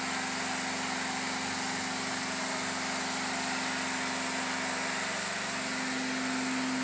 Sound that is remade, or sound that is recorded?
recorded